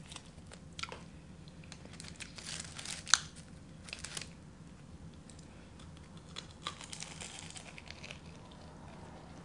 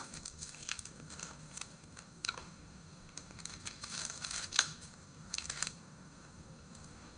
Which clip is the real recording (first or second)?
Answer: first